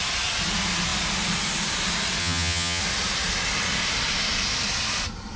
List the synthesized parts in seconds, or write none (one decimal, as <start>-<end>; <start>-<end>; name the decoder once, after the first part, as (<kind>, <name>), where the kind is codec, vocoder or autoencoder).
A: 2.2-2.8 (vocoder, HiFi-GAN)

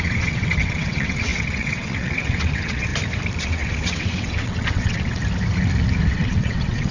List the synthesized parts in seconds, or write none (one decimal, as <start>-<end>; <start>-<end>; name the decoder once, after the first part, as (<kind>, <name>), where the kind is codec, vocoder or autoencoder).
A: 0.0-2.9 (vocoder, WaveNeXt); 3.4-5.2; 6.1-6.9

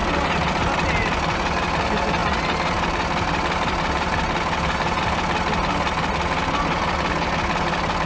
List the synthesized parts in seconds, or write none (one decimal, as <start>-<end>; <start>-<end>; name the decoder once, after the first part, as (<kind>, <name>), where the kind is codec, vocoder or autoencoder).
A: none

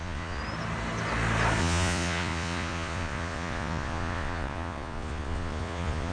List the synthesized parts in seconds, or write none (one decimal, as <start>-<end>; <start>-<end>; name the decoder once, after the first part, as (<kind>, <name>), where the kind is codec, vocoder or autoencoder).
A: 0.0-0.4 (vocoder, Vocos); 1.6-6.1

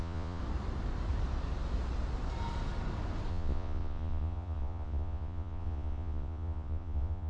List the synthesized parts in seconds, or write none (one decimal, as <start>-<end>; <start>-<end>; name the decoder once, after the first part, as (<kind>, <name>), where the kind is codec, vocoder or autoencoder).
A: 0.0-0.4 (vocoder, Vocos); 3.3-7.3

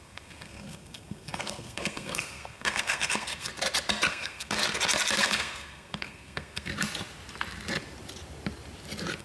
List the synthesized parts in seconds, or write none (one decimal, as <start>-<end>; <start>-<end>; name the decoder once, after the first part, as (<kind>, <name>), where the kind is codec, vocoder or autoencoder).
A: 0.0-3.5 (codec, SNAC); 4.1-4.6; 5.2-6.7

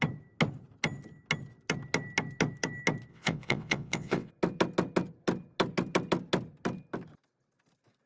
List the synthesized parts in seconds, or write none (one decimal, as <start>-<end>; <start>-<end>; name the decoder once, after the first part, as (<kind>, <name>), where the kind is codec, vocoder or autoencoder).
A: 3.1-4.3 (vocoder, WaveNeXt)